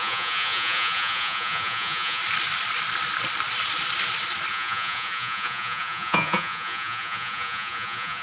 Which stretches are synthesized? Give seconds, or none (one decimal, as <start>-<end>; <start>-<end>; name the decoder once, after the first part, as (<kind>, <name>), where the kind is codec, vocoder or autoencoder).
0.0-2.2 (vocoder, Vocos); 4.5-8.2